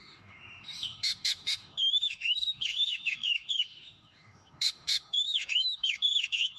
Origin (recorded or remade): remade